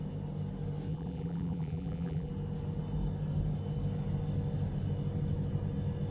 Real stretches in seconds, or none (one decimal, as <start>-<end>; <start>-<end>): 0.0-0.9; 2.3-6.1